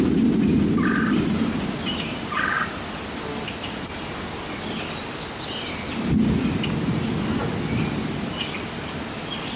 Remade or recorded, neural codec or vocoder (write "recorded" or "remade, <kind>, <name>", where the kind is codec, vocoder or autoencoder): recorded